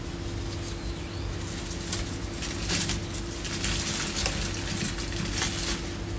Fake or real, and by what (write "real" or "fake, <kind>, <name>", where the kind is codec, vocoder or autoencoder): real